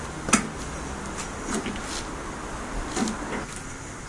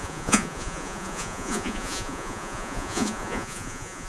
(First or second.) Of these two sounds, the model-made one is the second